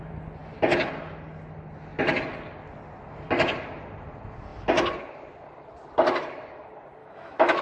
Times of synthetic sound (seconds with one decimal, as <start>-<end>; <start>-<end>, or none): 7.0-7.6